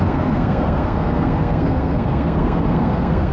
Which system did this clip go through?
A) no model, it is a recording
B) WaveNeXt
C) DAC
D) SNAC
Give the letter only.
D